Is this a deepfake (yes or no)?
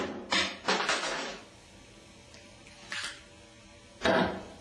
no